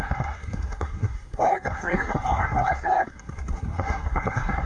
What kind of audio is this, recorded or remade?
remade